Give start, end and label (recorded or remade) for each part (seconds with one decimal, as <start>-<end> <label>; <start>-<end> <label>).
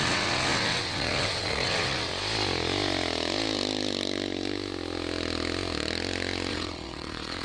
0.0-2.1 remade; 2.1-6.5 recorded; 6.5-7.4 remade